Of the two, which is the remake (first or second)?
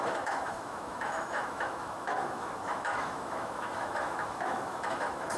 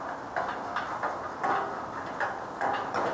first